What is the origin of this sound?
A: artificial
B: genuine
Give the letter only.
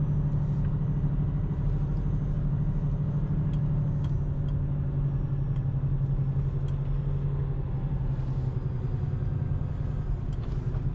B